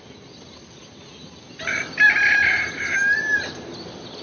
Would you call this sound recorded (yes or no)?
yes